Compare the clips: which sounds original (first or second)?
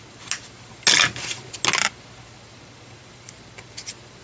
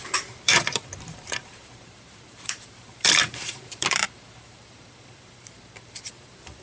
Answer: first